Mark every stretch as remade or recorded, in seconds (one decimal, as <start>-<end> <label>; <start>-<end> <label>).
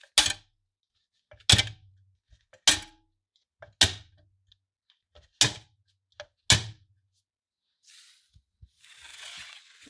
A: 0.0-9.1 recorded; 9.1-9.9 remade